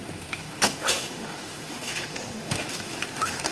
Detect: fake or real fake